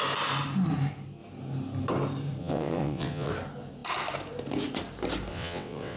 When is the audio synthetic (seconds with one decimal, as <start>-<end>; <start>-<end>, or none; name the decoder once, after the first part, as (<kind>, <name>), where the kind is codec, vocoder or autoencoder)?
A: 2.4-3.3 (vocoder, WaveNeXt); 5.3-6.0